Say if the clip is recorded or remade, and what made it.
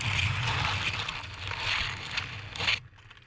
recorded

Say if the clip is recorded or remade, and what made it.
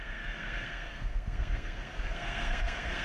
remade, codec, SNAC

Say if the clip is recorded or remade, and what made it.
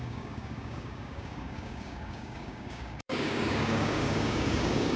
remade, codec, DAC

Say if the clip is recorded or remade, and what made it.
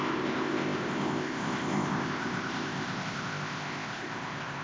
remade, codec, ZipCodec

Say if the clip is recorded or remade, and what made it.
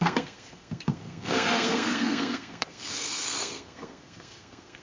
remade, codec, SNAC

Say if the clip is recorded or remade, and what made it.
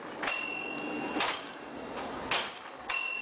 recorded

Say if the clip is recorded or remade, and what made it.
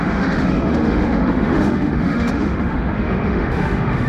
remade, autoencoder, DAC-VAE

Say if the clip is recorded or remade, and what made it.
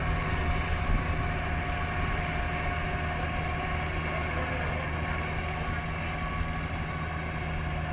recorded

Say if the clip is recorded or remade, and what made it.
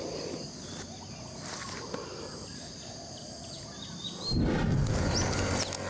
recorded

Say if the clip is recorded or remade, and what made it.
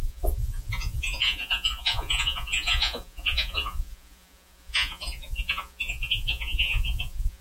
remade, vocoder, Vocos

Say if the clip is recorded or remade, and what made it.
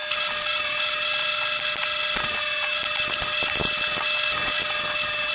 recorded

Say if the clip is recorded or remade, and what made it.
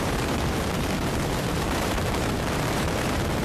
remade, vocoder, BigVGAN v2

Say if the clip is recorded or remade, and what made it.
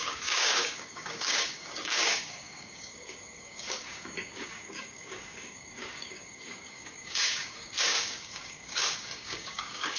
remade, codec, DAC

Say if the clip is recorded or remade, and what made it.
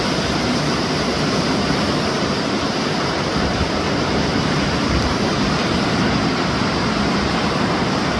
remade, vocoder, BigVGAN v2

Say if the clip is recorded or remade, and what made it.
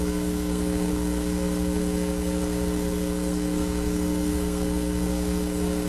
remade, codec, SNAC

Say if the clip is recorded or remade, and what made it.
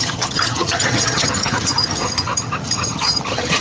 remade, vocoder, HiFi-GAN